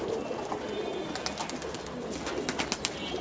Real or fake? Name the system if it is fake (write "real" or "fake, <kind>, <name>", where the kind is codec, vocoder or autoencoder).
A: real